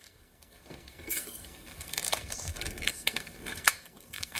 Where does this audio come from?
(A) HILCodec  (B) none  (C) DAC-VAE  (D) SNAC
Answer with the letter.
D